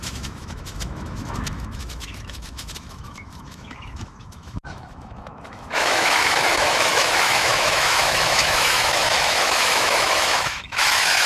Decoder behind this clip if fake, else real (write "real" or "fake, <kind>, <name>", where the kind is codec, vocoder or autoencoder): fake, autoencoder, DAC-VAE